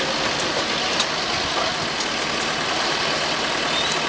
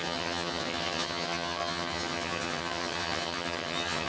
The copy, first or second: second